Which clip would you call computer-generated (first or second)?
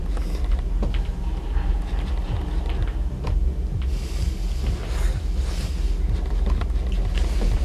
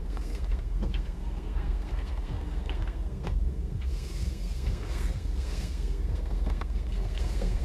second